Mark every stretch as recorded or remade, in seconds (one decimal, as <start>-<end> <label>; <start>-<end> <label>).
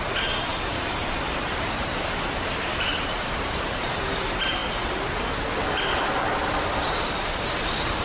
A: 0.0-0.5 recorded; 0.5-4.0 remade; 4.0-8.0 recorded